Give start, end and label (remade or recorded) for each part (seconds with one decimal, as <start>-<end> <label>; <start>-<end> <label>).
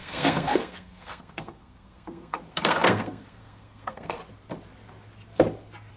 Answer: 0.0-4.2 remade; 4.2-6.0 recorded